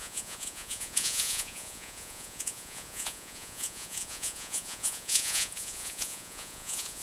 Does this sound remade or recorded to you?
remade